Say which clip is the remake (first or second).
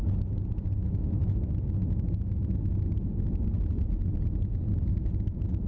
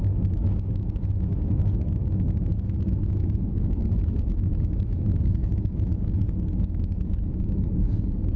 second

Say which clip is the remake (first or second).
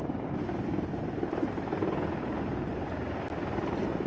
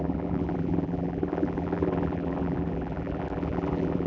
second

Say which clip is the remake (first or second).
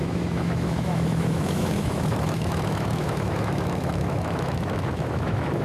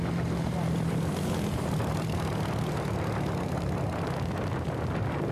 first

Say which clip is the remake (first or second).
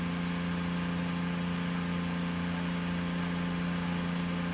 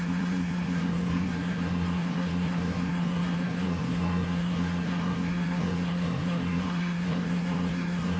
second